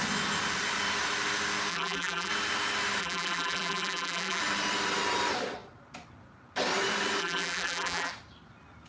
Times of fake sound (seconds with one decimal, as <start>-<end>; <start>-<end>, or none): 1.7-2.3; 3.0-4.4; 7.2-8.1